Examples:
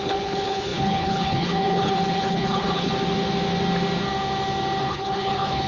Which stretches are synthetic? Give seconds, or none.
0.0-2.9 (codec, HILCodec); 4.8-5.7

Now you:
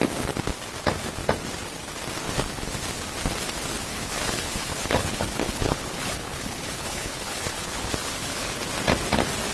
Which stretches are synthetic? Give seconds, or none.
3.9-8.6 (codec, HILCodec)

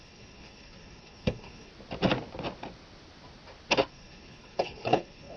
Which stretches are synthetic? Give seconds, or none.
0.0-1.7 (codec, HILCodec); 3.9-5.4

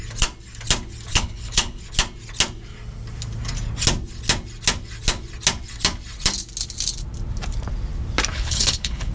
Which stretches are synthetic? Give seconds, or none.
1.1-1.8 (codec, HILCodec); 8.3-9.1

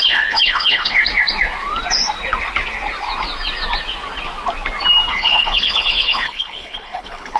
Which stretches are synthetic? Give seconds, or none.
0.0-1.0 (codec, HILCodec); 5.1-7.4